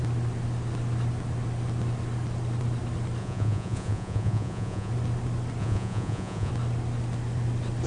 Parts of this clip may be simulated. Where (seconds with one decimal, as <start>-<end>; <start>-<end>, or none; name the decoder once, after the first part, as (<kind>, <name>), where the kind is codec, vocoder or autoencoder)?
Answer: 3.2-4.9 (vocoder, Vocos); 5.6-6.5